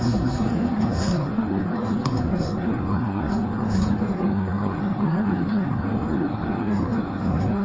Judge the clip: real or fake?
fake